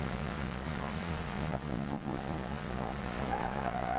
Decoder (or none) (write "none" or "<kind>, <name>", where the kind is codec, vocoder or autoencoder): vocoder, Vocos